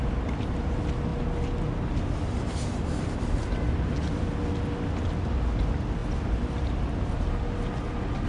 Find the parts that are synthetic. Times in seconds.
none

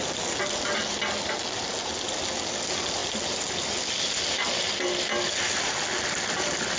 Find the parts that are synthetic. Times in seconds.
none

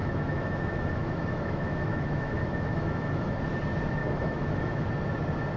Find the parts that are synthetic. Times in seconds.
0.0-3.4; 4.0-4.9

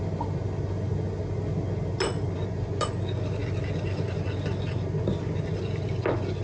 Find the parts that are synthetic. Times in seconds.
none

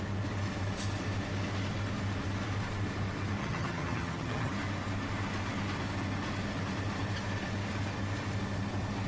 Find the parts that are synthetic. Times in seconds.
3.4-4.5

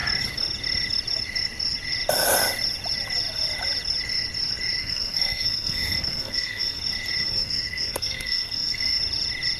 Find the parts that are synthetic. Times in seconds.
4.8-6.8; 7.2-9.0

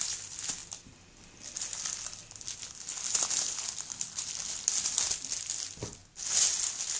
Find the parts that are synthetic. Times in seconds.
none

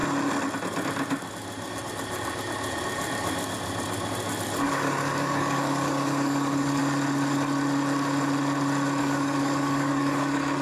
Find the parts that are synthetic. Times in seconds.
4.6-6.8; 9.0-10.6